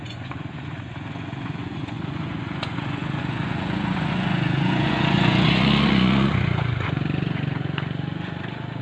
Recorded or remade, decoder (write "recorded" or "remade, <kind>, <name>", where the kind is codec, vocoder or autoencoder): remade, vocoder, Vocos